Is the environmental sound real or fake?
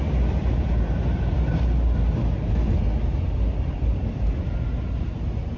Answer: real